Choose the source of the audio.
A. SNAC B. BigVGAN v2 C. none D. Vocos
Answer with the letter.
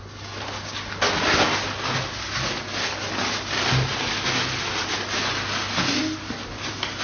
C